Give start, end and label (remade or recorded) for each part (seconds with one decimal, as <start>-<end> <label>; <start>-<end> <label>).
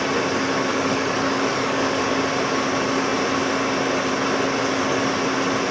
0.0-0.7 recorded; 0.7-2.1 remade; 2.1-5.7 recorded